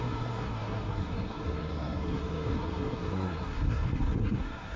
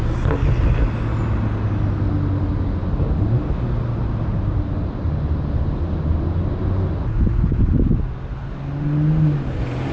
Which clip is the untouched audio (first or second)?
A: second